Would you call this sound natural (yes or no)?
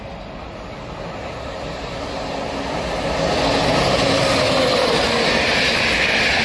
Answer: yes